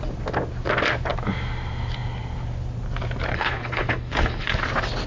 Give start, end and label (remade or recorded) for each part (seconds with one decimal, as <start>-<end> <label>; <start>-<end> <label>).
0.0-3.3 recorded; 3.3-4.6 remade; 4.6-5.1 recorded

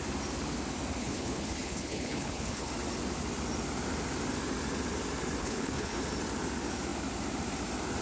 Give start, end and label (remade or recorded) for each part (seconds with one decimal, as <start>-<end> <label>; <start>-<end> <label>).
0.0-1.0 recorded; 1.0-2.7 remade; 2.7-5.4 recorded; 5.4-6.0 remade; 6.0-8.0 recorded

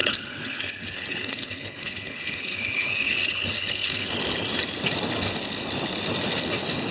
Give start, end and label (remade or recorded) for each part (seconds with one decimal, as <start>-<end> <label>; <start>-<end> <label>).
0.0-4.1 remade; 4.1-6.9 recorded